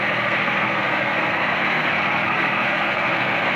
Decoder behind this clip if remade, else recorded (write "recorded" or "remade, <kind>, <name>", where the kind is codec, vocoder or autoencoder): remade, codec, SNAC